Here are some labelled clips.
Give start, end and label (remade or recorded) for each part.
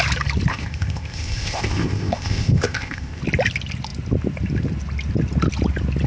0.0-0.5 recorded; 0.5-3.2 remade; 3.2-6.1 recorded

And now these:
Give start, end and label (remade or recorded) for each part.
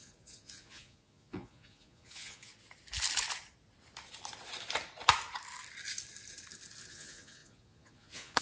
0.0-2.5 remade; 2.5-6.9 recorded; 6.9-8.4 remade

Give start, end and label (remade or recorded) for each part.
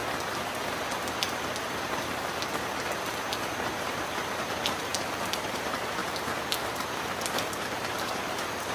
0.0-3.8 recorded; 3.8-6.0 remade; 6.0-6.6 recorded; 6.6-8.7 remade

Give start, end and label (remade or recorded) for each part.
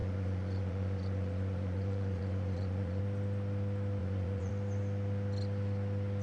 0.0-3.0 remade; 3.0-4.0 recorded; 4.0-4.5 remade; 4.5-6.2 recorded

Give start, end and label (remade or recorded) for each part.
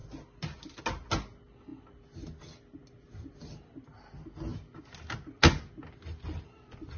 0.0-7.0 recorded